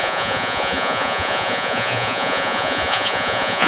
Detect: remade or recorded remade